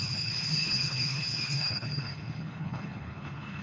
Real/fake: fake